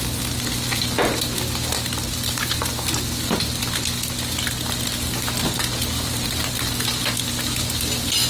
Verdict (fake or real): real